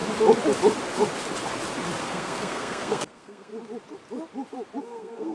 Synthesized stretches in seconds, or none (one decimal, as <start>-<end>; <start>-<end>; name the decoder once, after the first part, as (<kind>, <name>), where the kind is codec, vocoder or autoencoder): 2.0-3.5 (codec, SNAC); 4.8-5.3